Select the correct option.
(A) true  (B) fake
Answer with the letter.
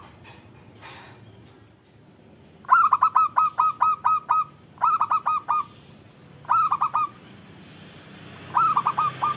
A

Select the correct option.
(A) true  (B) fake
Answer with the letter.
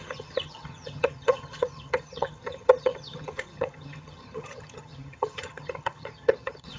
B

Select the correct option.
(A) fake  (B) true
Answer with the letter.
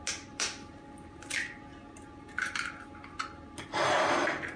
B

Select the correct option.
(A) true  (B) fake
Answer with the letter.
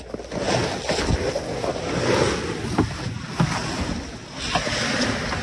A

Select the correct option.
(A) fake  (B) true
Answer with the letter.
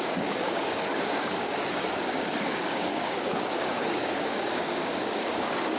A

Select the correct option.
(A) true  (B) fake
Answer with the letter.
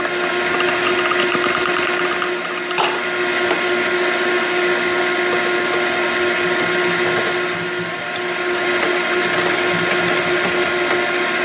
A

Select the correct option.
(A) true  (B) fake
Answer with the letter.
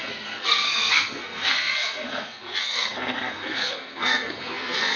B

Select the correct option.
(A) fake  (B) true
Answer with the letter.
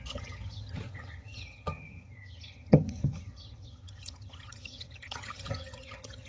A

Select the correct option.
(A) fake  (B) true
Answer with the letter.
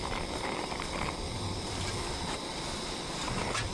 B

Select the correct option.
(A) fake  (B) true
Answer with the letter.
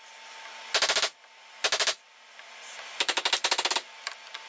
B